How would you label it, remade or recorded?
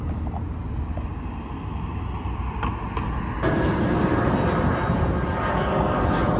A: recorded